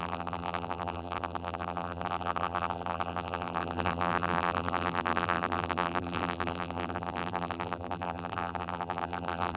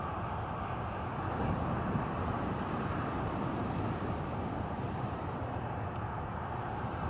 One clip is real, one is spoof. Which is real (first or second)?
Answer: second